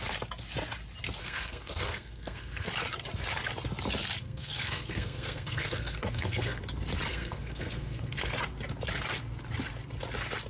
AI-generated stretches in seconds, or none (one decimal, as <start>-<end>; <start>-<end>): 1.2-2.7; 4.2-6.6; 7.1-8.3